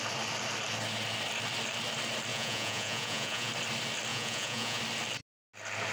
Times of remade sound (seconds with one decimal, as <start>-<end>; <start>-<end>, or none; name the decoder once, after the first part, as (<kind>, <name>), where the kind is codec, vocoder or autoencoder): 2.3-3.5 (vocoder, Vocos); 4.1-4.8